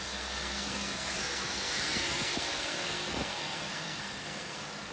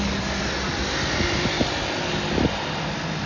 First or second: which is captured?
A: second